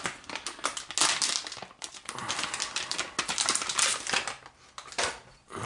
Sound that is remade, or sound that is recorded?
recorded